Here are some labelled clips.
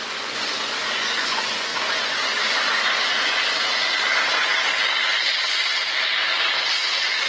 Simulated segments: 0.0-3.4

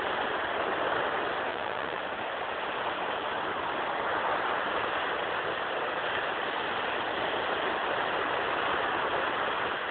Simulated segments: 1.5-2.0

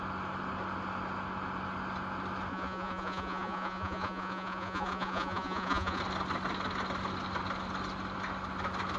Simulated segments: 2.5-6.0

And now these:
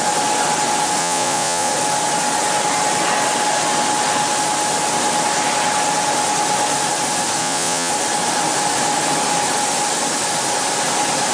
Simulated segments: 1.0-1.7; 7.4-7.9

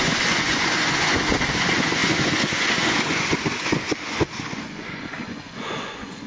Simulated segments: 0.0-6.3

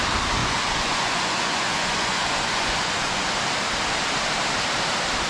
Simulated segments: 0.4-3.3